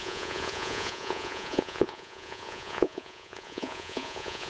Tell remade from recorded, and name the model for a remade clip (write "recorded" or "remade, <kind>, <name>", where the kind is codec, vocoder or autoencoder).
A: remade, vocoder, Vocos